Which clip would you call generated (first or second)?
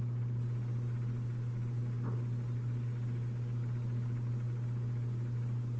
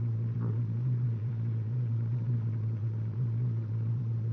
second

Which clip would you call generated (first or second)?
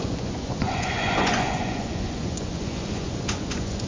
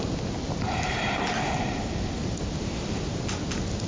first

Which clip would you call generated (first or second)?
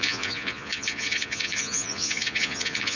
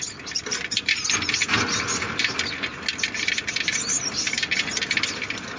first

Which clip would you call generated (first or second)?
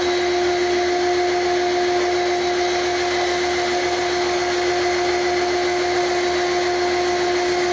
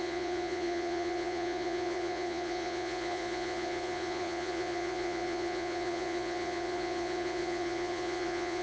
second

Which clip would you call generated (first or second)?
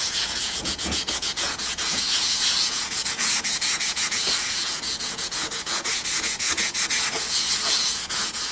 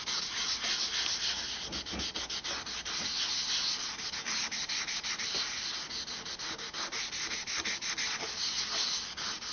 first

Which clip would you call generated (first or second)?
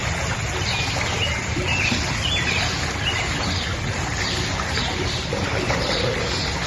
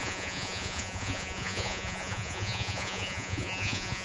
second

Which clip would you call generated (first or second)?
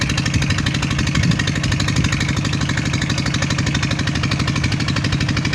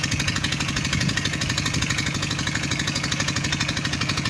second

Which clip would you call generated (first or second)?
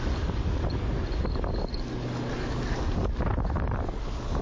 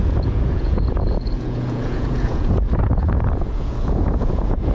second